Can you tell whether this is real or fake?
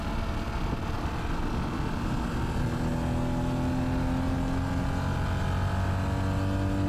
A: real